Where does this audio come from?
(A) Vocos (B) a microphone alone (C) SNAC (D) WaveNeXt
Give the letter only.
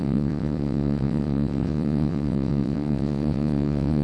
D